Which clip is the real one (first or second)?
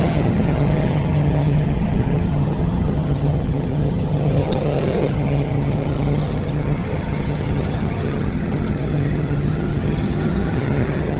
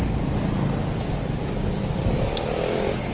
second